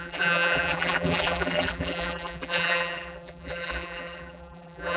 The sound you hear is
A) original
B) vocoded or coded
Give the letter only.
B